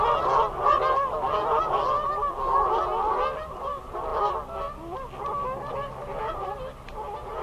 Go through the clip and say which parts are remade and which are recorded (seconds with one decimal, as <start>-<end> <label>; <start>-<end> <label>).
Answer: 0.0-7.4 recorded